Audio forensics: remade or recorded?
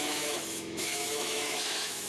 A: remade